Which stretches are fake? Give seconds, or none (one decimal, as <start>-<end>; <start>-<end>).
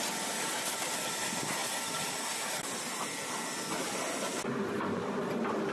none